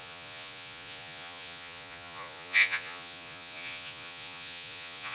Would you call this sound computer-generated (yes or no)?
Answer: yes